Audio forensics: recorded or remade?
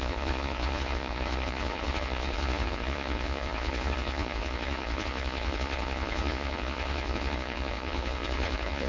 remade